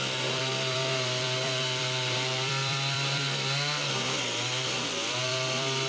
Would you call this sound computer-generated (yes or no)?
yes